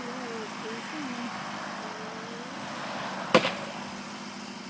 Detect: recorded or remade recorded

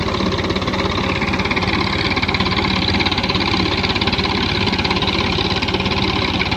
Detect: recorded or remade recorded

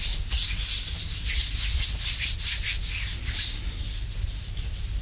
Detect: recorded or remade recorded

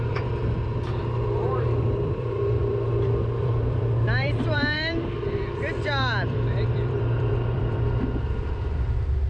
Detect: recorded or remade remade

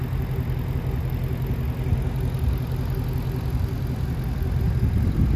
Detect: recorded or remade recorded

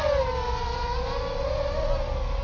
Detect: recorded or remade recorded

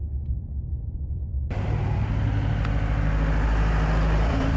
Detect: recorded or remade remade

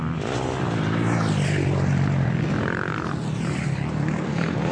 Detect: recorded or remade recorded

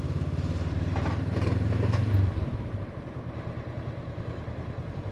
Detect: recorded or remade remade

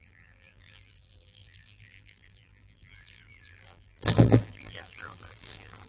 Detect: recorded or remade remade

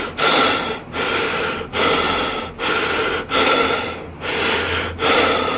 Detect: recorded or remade remade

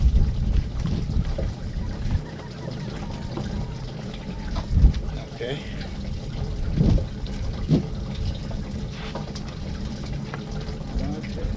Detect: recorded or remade remade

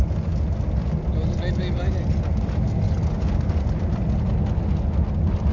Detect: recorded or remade recorded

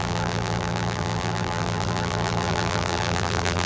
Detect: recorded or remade remade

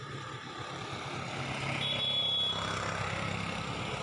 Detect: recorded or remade recorded